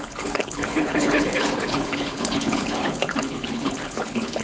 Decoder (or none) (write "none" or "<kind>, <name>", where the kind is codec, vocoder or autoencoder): codec, HILCodec